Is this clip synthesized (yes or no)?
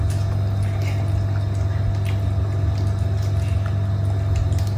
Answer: no